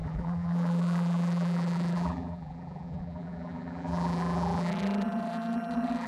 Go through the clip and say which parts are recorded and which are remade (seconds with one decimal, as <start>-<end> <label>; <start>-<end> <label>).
0.0-6.1 remade